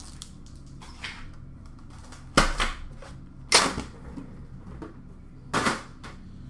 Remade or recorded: recorded